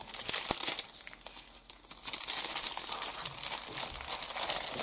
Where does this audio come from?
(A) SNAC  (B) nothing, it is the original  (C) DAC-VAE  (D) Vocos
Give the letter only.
B